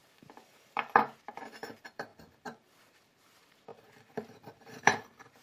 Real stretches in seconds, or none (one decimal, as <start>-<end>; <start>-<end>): none